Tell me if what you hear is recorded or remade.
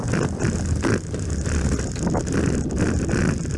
recorded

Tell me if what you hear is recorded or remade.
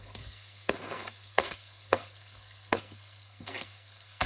remade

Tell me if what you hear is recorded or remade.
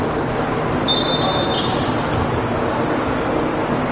recorded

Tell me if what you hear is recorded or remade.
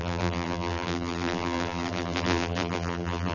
remade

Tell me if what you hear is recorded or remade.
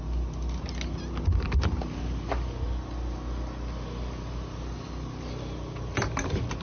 recorded